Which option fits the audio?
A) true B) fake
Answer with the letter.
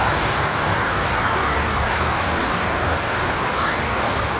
B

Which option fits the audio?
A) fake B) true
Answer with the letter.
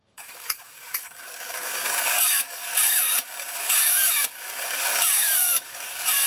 A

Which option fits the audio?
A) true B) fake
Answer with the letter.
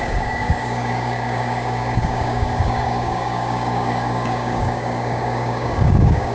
B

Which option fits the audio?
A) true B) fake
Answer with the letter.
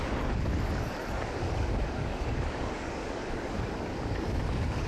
B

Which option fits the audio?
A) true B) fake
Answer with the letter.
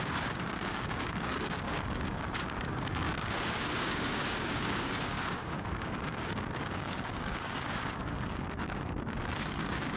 B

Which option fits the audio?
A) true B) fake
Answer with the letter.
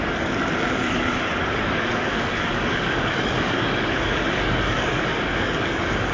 B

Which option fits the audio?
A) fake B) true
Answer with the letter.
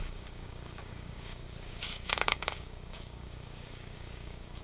A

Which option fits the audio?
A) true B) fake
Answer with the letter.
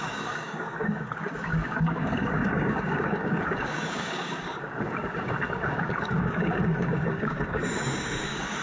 B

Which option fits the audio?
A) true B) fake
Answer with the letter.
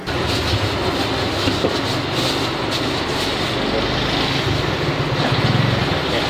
A